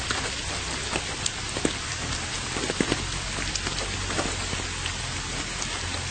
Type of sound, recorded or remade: recorded